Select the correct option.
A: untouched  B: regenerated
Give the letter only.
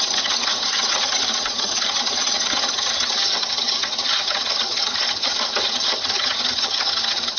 B